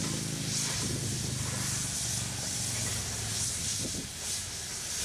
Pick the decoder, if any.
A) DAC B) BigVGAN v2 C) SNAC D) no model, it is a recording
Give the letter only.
D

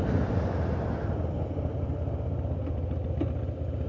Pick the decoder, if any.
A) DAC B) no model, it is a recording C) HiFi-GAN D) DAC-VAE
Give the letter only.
B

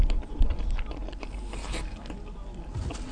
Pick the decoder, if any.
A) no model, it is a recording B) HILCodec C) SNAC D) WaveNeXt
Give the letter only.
A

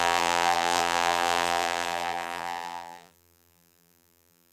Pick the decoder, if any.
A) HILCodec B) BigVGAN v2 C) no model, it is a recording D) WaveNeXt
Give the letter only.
B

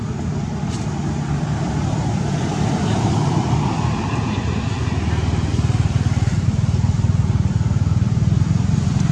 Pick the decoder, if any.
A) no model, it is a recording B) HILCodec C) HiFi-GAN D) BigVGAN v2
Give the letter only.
D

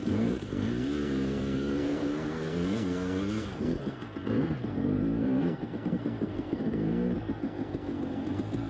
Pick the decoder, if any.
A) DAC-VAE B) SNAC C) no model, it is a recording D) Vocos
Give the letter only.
B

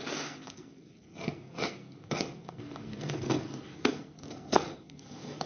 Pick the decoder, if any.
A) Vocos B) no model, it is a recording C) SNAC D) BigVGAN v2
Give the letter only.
C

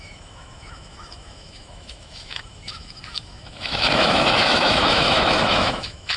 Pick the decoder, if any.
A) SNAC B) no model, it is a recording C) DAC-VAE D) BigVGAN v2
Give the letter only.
C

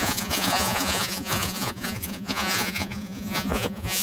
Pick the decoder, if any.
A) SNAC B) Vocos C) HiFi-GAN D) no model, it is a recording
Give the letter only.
B